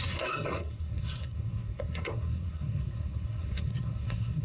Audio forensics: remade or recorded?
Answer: remade